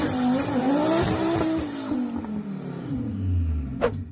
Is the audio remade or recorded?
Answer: recorded